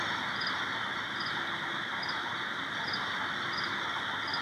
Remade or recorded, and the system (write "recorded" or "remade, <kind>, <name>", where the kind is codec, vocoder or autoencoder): recorded